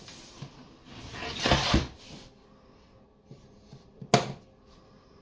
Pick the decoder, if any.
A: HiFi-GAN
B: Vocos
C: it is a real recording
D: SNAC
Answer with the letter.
C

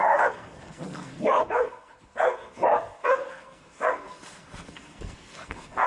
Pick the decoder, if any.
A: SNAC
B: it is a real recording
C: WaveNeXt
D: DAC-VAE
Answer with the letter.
A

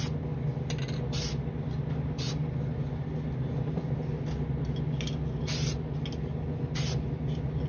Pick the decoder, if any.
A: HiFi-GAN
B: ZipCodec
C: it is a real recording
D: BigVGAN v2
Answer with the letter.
C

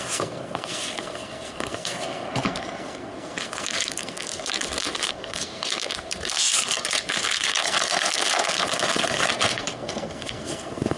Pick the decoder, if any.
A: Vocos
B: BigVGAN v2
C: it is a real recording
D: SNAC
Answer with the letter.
D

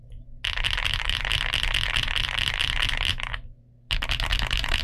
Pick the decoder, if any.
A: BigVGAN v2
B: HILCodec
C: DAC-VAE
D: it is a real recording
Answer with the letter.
D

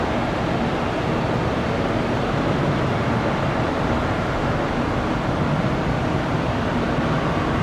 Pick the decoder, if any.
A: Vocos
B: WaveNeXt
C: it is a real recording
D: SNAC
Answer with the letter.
C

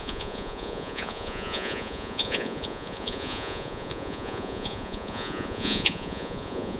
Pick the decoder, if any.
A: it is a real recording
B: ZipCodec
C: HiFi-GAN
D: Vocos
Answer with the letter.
D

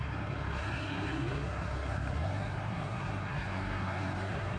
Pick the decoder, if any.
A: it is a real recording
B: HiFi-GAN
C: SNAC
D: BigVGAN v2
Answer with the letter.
C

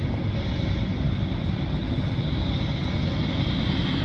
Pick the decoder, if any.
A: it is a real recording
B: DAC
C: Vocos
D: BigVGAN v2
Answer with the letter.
A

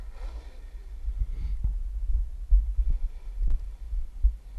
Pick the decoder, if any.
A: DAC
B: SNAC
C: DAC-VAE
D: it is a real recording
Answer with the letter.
D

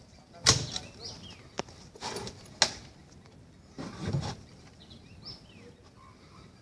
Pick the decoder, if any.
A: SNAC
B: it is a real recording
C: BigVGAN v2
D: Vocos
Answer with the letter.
B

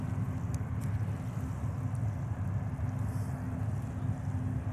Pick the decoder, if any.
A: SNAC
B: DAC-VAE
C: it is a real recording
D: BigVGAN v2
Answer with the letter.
C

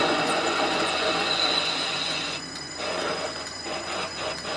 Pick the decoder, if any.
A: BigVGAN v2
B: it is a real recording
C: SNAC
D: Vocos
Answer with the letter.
D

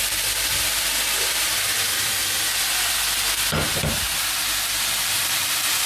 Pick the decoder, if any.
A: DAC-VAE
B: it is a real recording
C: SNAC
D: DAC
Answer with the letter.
B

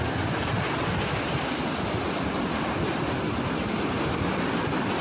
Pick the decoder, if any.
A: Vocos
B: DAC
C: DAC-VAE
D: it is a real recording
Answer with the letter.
D